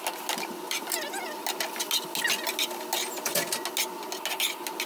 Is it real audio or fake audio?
real